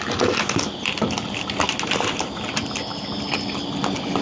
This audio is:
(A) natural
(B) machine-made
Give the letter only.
A